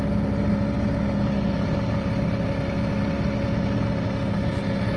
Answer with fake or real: real